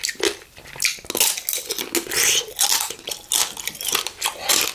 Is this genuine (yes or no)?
yes